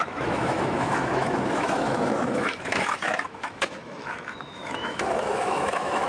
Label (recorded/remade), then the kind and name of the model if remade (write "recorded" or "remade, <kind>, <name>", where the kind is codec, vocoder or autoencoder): remade, autoencoder, DAC-VAE